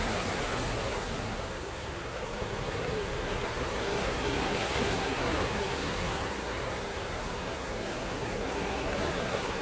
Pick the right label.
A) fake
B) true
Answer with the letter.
A